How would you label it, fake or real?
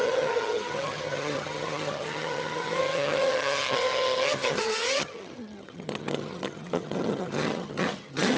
fake